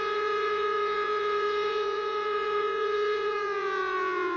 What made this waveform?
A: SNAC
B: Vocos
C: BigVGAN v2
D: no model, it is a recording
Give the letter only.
B